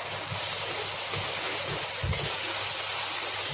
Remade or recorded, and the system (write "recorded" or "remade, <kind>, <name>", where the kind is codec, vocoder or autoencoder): recorded